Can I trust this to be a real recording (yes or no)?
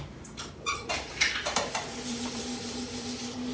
no